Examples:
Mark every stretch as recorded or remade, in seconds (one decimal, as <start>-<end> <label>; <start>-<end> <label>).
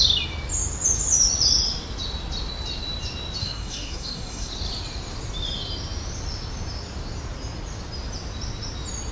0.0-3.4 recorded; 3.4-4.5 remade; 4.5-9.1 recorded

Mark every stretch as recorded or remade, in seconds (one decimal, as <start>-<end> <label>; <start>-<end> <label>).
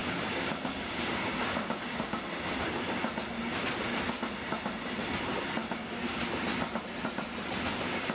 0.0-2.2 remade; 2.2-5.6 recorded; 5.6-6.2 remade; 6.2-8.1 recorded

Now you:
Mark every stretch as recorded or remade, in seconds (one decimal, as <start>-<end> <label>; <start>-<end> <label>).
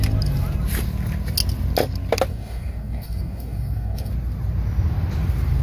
0.0-2.3 recorded; 2.3-4.1 remade; 4.1-5.6 recorded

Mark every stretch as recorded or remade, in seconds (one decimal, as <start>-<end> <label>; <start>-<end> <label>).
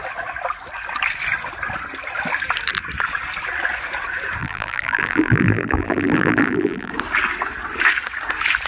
0.0-4.4 recorded; 4.4-6.9 remade; 6.9-8.7 recorded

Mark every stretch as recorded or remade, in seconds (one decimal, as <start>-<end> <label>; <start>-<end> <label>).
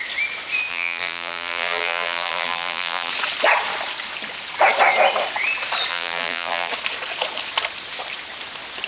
0.0-0.7 recorded; 0.7-3.1 remade; 3.1-5.9 recorded; 5.9-6.7 remade; 6.7-8.9 recorded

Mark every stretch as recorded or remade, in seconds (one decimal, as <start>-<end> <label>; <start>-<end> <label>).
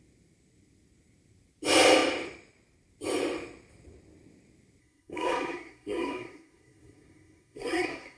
0.0-4.8 recorded; 4.8-8.2 remade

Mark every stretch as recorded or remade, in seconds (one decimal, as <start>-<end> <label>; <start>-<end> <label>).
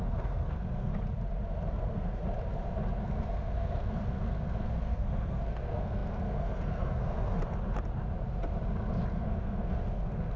0.0-0.9 remade; 0.9-1.7 recorded; 1.7-2.2 remade; 2.2-3.0 recorded; 3.0-7.4 remade; 7.4-9.1 recorded; 9.1-10.4 remade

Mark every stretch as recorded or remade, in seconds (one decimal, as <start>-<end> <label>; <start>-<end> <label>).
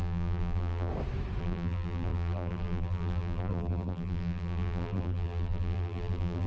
0.0-0.9 remade; 0.9-1.4 recorded; 1.4-6.5 remade